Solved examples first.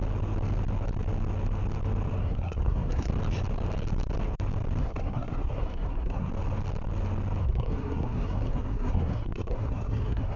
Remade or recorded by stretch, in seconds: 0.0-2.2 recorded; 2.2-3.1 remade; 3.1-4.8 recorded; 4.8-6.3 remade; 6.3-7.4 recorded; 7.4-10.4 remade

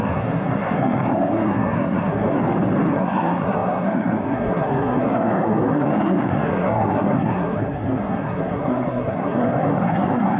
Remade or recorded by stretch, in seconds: 0.0-2.4 remade; 2.4-2.9 recorded; 2.9-10.4 remade